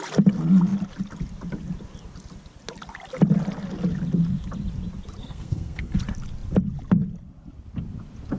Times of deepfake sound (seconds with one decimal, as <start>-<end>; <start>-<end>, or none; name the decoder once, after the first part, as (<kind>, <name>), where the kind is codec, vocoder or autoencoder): 5.2-6.0 (codec, SNAC)

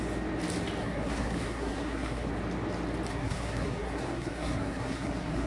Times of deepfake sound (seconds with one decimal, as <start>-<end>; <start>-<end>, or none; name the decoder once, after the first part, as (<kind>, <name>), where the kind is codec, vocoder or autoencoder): 0.8-2.3 (codec, SNAC); 3.1-5.5

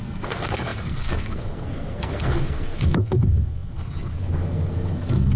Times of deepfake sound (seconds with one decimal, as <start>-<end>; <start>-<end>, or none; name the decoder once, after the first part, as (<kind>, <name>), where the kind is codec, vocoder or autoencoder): 0.0-5.4 (codec, SNAC)

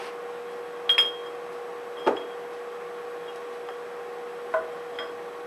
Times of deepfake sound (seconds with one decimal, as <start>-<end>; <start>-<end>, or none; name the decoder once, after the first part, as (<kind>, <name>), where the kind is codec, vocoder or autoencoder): none

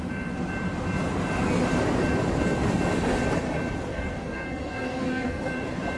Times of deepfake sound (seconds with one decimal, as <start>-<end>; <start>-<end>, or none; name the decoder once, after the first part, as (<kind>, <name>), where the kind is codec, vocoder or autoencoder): 3.9-5.5 (codec, SNAC)

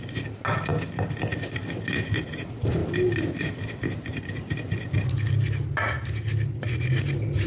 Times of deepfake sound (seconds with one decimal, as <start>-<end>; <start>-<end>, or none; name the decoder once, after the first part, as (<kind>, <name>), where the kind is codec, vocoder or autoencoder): none

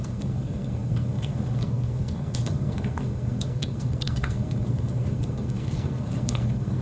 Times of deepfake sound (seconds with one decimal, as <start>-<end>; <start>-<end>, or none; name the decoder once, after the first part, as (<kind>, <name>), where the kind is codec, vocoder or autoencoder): 0.0-6.8 (codec, SNAC)

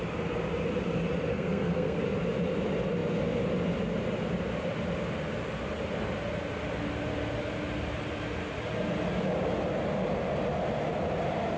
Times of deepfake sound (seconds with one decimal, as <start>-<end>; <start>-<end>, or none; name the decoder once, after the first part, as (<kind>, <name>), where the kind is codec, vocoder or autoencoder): 1.3-2.0 (codec, SNAC)